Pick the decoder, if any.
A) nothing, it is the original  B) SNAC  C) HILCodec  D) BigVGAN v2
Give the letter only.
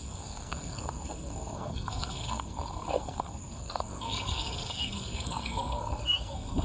B